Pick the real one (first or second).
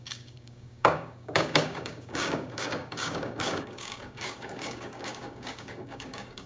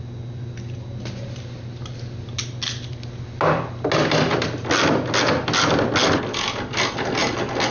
second